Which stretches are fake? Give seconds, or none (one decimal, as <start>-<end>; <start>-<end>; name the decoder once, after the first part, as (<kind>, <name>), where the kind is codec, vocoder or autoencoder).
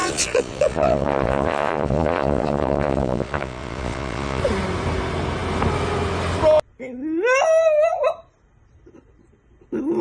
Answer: 0.0-4.4 (vocoder, Vocos)